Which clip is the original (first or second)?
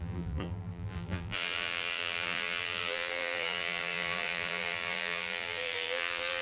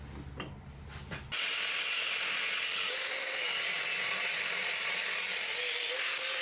second